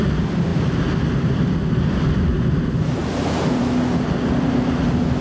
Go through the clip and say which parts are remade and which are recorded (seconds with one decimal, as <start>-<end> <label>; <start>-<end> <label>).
0.0-5.2 recorded